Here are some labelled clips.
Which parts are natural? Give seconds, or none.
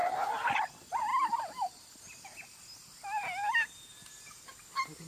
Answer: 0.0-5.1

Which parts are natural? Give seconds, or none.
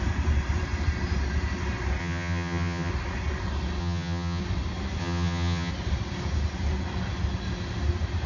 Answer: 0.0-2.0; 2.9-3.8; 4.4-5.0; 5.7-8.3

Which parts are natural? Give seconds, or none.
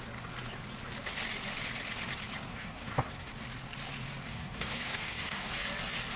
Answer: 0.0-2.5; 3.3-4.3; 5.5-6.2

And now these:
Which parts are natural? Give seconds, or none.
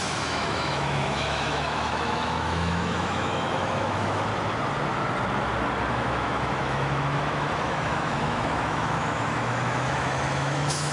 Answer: 4.3-5.9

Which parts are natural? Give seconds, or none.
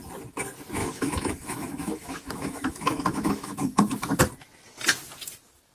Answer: 0.0-0.8; 4.2-5.7